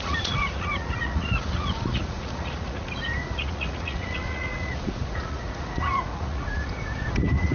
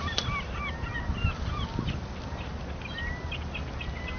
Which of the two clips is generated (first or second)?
first